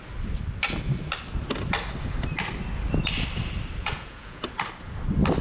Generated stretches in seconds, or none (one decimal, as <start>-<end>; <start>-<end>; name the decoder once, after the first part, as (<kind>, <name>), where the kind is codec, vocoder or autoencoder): 3.8-4.4 (vocoder, Vocos)